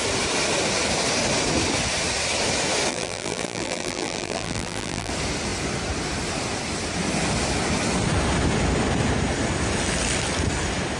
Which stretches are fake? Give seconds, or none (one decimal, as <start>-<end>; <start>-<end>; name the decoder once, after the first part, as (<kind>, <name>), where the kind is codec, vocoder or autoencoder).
2.9-5.1 (vocoder, BigVGAN v2)